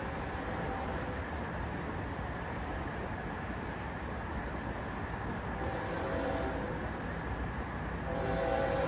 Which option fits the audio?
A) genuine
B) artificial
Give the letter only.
A